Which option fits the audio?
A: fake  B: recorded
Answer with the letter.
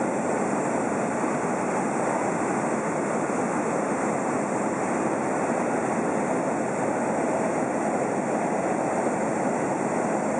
B